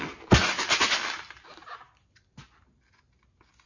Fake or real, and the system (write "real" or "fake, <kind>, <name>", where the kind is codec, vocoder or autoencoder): real